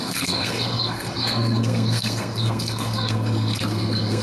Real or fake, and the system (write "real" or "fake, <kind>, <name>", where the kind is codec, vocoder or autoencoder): fake, codec, SNAC